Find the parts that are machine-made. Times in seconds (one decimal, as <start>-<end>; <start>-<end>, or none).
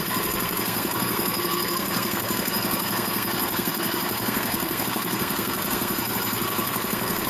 0.0-7.3